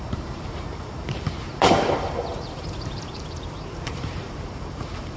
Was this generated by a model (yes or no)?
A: yes